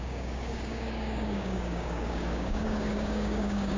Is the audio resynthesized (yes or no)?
yes